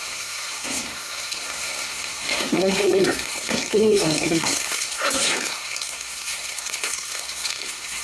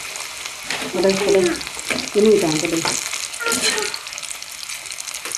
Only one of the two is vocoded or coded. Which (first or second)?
first